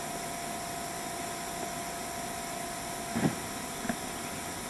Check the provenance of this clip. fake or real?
real